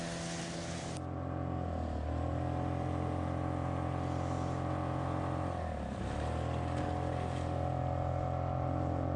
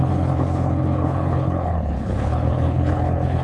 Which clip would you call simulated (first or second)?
second